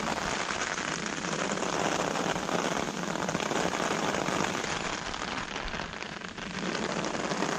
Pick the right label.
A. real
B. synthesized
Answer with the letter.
A